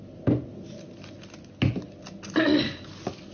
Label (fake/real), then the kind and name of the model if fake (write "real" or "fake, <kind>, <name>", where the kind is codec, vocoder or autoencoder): real